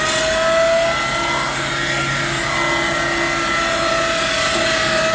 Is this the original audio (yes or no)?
yes